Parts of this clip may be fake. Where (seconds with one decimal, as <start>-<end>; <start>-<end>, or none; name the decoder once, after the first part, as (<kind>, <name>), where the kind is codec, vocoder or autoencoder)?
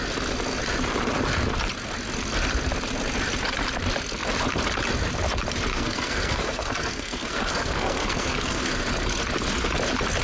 5.7-8.8 (codec, SNAC)